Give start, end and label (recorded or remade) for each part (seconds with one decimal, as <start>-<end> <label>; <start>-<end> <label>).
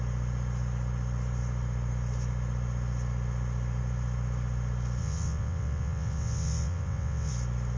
0.0-5.0 recorded; 5.0-7.3 remade; 7.3-7.8 recorded